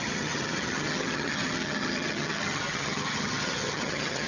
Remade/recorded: remade